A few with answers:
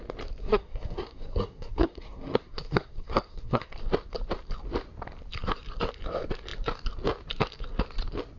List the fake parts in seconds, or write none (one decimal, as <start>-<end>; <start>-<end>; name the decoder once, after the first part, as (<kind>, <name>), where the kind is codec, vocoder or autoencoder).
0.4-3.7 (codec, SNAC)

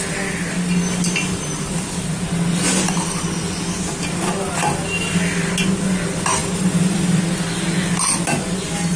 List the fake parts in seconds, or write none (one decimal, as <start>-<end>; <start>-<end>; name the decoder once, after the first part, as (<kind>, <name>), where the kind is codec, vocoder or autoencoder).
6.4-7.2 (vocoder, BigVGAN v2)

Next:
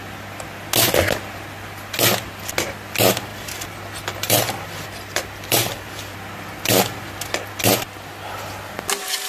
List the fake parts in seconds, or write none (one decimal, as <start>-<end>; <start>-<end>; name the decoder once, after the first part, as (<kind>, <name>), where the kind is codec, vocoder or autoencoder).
3.3-5.8 (vocoder, BigVGAN v2)

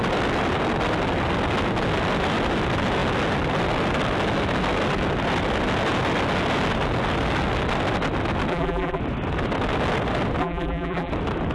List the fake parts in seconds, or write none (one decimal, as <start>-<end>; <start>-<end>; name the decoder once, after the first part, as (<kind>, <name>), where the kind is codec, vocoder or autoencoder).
8.5-9.0 (vocoder, BigVGAN v2); 10.4-11.1

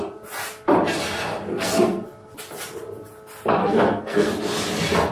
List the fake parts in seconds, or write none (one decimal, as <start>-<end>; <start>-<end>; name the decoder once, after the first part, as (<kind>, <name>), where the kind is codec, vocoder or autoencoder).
1.5-2.3 (codec, SNAC); 3.6-4.3